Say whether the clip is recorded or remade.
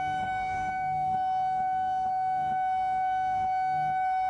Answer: remade